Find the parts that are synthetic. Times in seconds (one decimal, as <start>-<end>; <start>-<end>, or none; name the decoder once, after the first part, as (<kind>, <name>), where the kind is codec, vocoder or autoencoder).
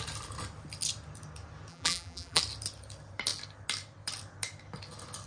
1.7-2.4 (vocoder, BigVGAN v2)